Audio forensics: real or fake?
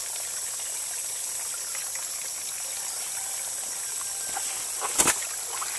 real